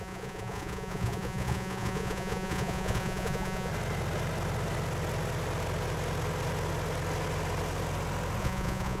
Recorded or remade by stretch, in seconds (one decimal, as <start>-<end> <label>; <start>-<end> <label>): 0.0-3.7 remade; 3.7-8.4 recorded; 8.4-9.0 remade

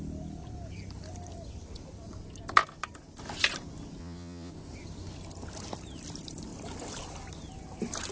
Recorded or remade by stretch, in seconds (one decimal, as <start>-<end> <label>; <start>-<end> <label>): 0.0-4.0 recorded; 4.0-4.5 remade; 4.5-8.1 recorded

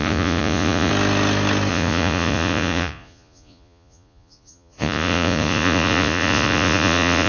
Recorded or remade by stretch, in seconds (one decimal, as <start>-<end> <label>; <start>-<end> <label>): 0.0-0.9 remade; 0.9-1.7 recorded; 1.7-7.3 remade

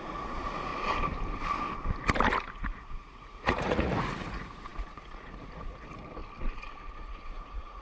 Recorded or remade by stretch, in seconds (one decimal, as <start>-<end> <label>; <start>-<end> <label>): 0.0-0.7 remade; 0.7-2.5 recorded; 2.5-6.2 remade; 6.2-6.9 recorded; 6.9-7.8 remade

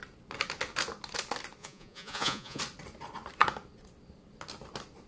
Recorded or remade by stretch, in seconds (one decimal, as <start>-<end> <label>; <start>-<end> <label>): 0.0-1.6 recorded; 1.6-2.6 remade; 2.6-5.1 recorded